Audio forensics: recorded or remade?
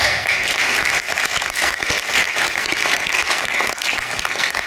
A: remade